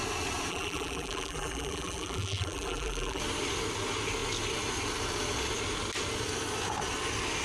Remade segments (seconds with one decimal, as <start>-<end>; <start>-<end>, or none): 0.5-3.2